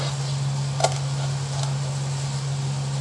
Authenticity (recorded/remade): recorded